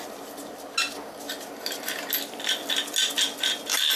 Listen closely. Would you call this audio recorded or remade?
recorded